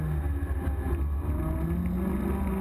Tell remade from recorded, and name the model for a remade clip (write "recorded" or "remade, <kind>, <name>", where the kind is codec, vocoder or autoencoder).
recorded